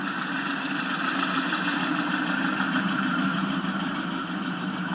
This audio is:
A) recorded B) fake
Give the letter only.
B